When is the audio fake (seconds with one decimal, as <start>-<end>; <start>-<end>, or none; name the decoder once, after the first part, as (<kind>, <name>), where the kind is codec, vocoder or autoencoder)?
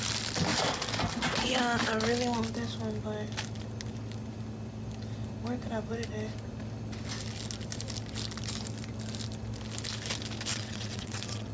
10.5-11.5 (vocoder, WaveNeXt)